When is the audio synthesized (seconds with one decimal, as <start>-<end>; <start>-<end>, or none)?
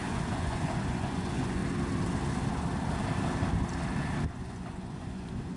0.0-1.6; 4.3-5.6